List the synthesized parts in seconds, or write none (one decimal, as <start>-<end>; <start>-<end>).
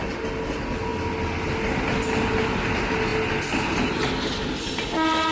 none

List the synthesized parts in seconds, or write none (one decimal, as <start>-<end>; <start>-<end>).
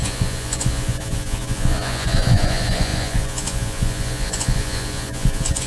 0.0-5.7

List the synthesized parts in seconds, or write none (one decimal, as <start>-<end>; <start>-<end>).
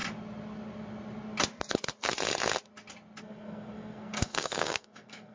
3.2-5.3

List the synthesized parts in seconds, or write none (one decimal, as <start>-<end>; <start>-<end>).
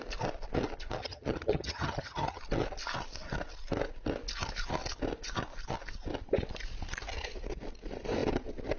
1.0-2.4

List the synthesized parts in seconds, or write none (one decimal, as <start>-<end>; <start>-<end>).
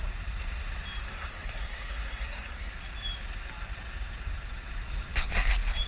1.1-2.7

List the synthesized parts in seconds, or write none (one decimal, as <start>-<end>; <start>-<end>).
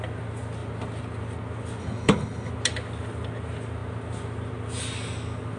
1.8-2.5